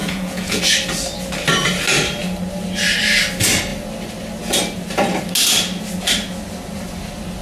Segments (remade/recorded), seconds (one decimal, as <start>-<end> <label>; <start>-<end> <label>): 0.0-0.6 remade; 0.6-7.4 recorded